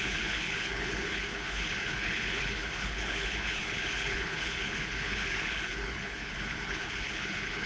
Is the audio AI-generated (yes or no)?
yes